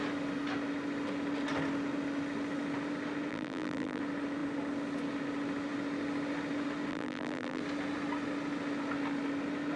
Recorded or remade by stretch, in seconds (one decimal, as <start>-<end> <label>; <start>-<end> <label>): 0.0-3.3 recorded; 3.3-4.0 remade; 4.0-6.9 recorded; 6.9-7.6 remade; 7.6-9.8 recorded